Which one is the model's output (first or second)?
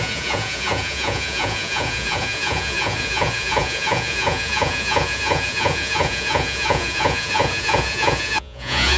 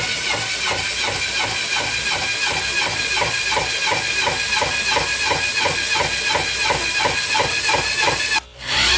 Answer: first